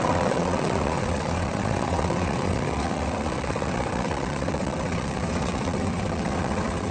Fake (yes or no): yes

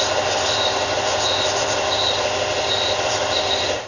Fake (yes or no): no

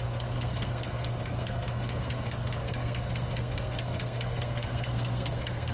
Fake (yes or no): yes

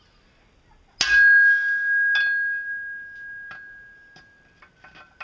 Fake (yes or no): no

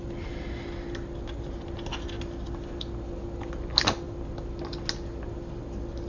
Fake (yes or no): no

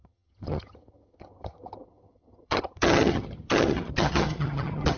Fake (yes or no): yes